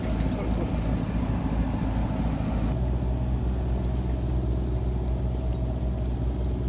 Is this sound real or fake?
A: real